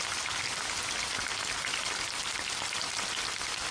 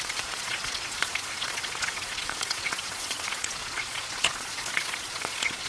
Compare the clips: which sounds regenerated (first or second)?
second